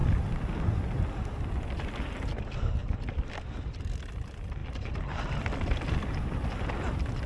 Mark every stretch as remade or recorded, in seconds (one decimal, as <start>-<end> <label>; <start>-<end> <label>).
0.0-2.8 recorded; 2.8-3.3 remade; 3.3-4.6 recorded; 4.6-5.9 remade; 5.9-7.3 recorded